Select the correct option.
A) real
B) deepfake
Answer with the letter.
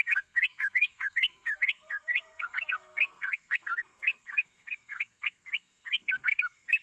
B